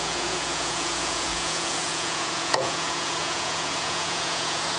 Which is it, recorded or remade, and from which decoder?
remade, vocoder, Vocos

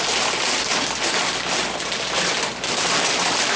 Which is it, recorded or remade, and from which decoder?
recorded